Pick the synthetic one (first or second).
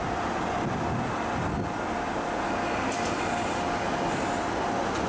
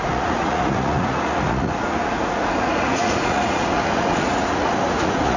second